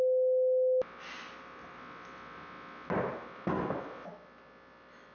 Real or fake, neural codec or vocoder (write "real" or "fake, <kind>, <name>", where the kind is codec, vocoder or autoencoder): real